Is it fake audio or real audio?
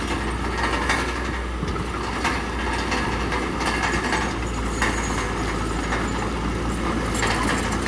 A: real